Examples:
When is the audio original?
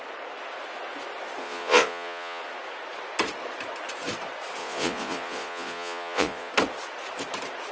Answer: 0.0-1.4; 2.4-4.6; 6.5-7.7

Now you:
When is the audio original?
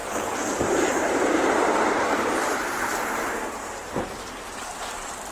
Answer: none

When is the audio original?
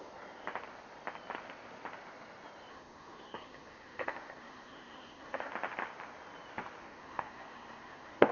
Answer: 0.0-2.7; 5.5-6.8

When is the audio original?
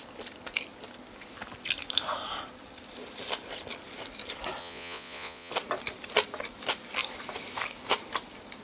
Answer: 0.0-4.6; 5.5-8.6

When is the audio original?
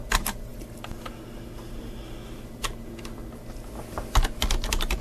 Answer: 0.0-5.0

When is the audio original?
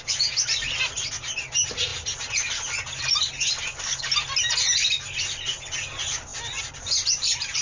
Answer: 0.0-7.6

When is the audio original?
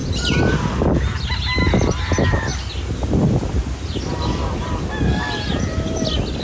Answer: 0.0-6.4